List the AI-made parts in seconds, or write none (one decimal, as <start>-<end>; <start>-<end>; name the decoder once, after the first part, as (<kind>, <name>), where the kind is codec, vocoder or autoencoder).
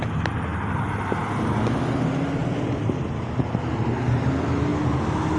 none